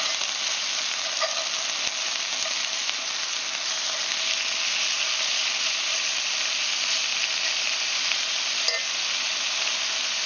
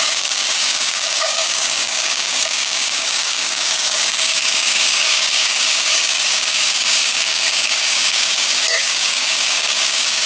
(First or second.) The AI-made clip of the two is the second